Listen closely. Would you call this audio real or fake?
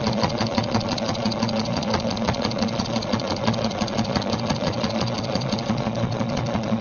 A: fake